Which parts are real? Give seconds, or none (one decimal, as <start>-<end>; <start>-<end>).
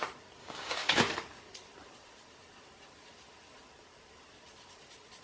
0.0-0.4; 1.0-5.2